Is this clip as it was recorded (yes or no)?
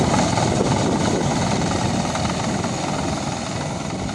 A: yes